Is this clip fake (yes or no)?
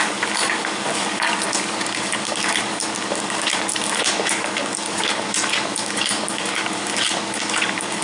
yes